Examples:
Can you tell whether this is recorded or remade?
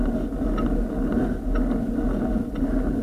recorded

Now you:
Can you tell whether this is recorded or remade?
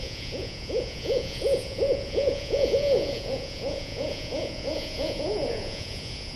remade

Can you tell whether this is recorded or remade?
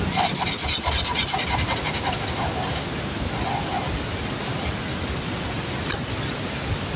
recorded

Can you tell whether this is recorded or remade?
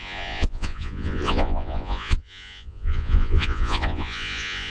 remade